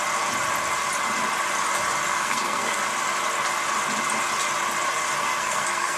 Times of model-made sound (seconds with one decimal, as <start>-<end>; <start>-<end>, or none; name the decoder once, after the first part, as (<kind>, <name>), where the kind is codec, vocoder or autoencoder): 2.1-2.8 (codec, SNAC); 5.2-6.0

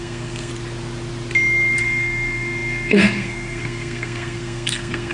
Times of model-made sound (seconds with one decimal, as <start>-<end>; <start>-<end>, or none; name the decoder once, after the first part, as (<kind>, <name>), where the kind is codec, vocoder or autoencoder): 0.0-0.5 (codec, SNAC); 1.8-5.1